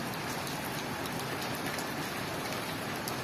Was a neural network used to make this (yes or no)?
no